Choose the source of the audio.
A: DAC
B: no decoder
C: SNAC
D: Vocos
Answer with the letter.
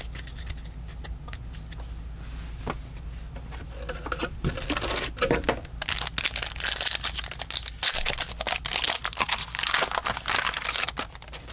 B